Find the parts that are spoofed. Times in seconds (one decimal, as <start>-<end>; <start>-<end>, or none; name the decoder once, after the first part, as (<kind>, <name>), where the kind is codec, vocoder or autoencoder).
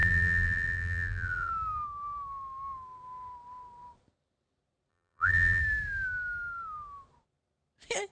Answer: 0.0-1.5 (vocoder, BigVGAN v2); 4.9-5.6